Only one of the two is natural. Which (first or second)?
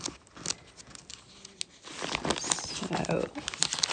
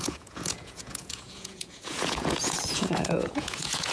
first